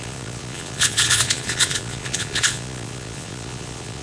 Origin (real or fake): fake